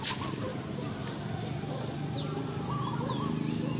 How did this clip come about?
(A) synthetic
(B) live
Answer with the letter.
B